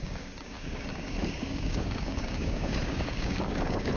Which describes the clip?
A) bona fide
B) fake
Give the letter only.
B